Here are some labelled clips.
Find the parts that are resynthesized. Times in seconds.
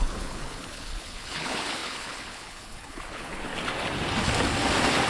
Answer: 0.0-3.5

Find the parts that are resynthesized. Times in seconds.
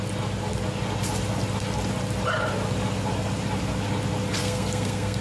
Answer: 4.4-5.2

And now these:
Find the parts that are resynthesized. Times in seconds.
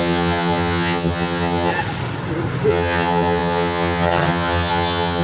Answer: 0.0-1.7; 2.7-5.2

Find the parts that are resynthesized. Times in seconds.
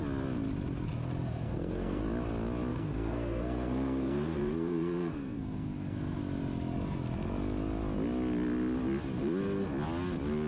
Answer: 1.4-2.0; 2.7-6.2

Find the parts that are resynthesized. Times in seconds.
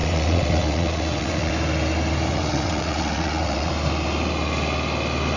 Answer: 0.0-1.5; 2.3-3.7